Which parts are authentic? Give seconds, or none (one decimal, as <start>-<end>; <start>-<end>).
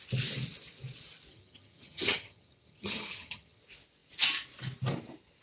0.0-1.3; 3.6-5.4